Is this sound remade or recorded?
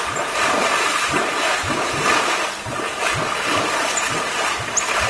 recorded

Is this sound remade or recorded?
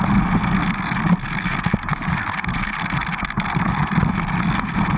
recorded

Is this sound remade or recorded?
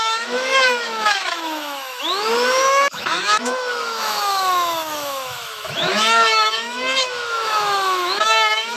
remade